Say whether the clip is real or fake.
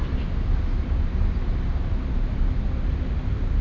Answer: real